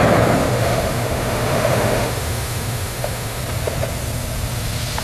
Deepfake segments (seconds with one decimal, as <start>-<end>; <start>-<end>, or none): 0.4-3.4